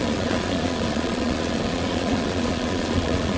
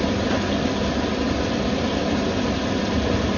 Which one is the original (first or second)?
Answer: second